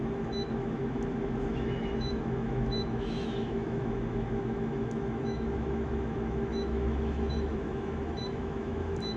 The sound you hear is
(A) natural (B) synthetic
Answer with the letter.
B